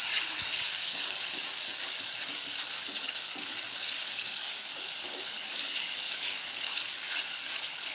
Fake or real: fake